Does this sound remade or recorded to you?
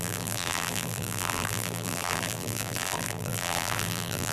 remade